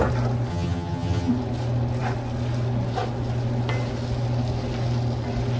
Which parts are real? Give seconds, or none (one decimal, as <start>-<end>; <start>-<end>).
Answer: 0.0-0.5; 1.3-5.6